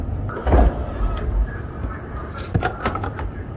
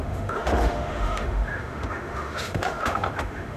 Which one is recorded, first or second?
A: first